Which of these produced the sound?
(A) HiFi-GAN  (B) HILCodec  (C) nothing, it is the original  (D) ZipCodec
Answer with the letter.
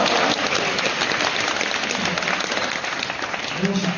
C